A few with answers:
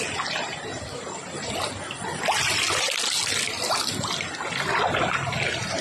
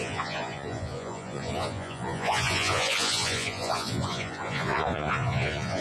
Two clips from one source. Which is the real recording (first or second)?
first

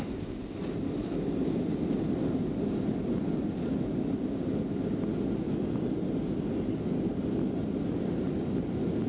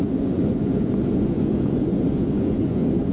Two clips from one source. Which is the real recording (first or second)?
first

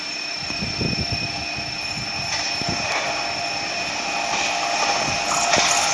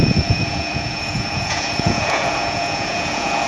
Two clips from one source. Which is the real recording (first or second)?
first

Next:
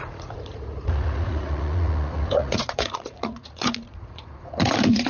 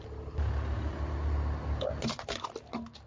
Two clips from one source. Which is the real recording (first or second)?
second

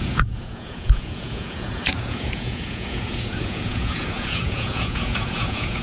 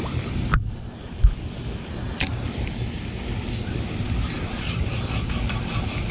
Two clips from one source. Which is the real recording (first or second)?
second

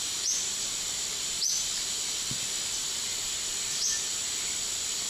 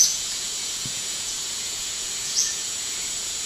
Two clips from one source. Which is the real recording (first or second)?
first